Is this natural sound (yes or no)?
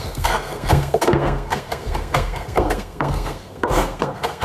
no